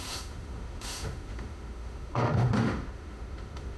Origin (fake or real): fake